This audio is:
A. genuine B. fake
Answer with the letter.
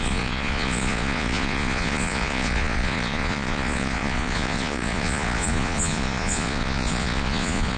B